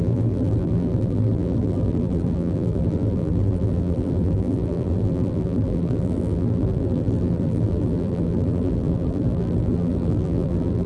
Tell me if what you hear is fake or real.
fake